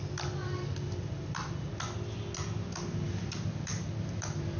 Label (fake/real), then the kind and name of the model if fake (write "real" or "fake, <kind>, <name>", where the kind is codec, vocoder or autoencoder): real